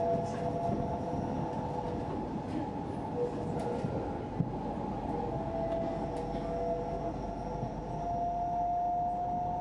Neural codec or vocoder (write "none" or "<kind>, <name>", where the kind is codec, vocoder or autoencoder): none